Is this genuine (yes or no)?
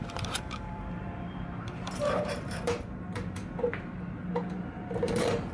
no